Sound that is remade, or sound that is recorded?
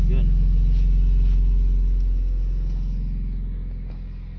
recorded